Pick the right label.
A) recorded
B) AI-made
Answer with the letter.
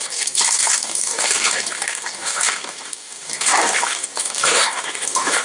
B